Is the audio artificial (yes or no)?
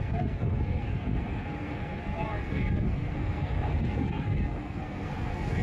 yes